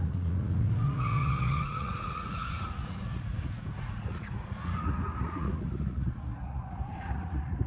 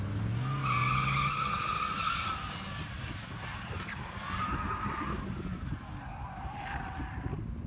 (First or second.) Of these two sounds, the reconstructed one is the first